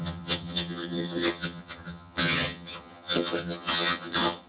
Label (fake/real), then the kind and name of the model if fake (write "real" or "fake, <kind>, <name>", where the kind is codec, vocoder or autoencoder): fake, vocoder, HiFi-GAN